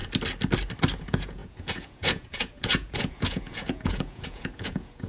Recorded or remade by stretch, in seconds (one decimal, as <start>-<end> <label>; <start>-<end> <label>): 0.0-1.0 recorded; 1.0-5.1 remade